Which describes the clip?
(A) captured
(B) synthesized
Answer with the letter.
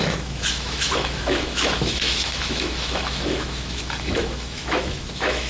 B